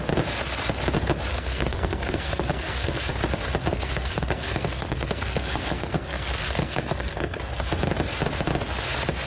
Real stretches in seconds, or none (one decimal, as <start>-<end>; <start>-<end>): 0.0-1.3; 3.1-3.7; 7.4-9.3